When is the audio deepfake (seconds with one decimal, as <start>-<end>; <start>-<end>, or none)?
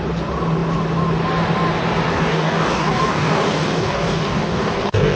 2.1-5.2